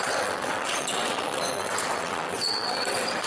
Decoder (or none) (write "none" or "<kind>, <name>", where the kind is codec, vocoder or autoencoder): vocoder, WaveNeXt